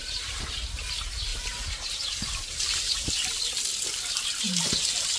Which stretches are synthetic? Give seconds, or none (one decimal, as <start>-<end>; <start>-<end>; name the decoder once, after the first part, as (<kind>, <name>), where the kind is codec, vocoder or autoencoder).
0.0-0.5 (vocoder, BigVGAN v2); 1.3-3.1